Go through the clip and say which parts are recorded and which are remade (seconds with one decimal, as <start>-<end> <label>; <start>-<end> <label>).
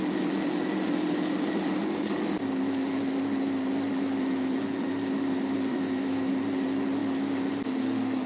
0.0-5.7 recorded; 5.7-6.3 remade; 6.3-8.3 recorded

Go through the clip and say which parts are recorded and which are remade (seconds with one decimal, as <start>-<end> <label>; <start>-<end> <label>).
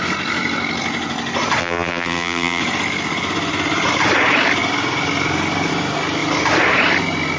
0.0-1.6 recorded; 1.6-2.6 remade; 2.6-7.4 recorded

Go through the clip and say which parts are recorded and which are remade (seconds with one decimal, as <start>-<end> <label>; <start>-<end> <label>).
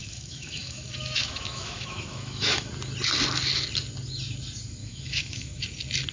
0.0-2.7 remade; 2.7-4.8 recorded; 4.8-5.6 remade; 5.6-6.1 recorded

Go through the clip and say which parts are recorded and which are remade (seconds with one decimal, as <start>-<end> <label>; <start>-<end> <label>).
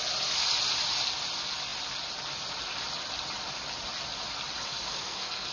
0.0-4.7 recorded; 4.7-5.5 remade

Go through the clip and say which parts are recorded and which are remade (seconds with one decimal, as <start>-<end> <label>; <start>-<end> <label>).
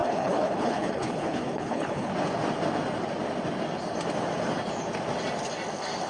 0.0-2.1 remade; 2.1-6.1 recorded